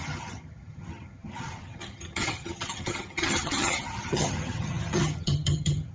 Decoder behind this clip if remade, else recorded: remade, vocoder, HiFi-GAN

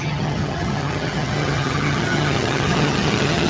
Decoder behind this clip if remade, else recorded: remade, vocoder, HiFi-GAN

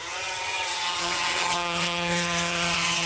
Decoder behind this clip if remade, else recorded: remade, vocoder, HiFi-GAN